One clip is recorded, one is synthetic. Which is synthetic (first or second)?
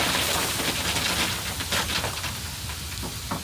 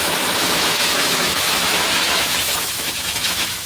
second